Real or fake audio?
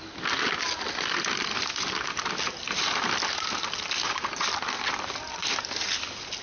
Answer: real